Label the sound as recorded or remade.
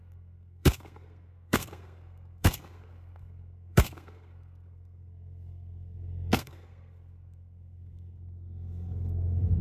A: remade